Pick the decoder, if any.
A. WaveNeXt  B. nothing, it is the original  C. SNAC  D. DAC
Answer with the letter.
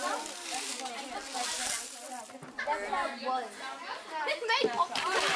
B